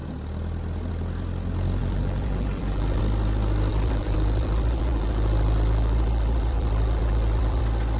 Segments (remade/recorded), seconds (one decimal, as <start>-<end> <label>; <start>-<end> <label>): 0.0-1.8 recorded; 1.8-3.0 remade; 3.0-3.7 recorded; 3.7-7.6 remade; 7.6-8.0 recorded